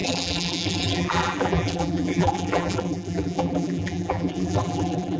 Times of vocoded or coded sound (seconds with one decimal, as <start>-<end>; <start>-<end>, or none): 0.0-5.2